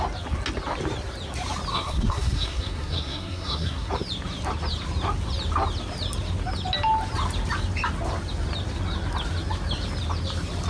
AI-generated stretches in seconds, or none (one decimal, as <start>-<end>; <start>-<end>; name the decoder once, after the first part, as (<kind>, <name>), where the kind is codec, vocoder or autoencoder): 1.7-3.9 (codec, SNAC)